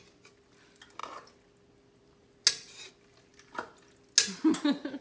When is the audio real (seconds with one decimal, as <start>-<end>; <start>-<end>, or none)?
0.0-5.0